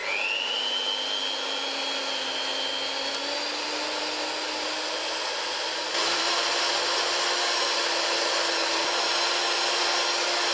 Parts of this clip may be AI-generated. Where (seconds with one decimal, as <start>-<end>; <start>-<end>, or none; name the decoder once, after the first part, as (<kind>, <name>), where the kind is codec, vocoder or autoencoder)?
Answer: 6.0-6.6 (vocoder, BigVGAN v2)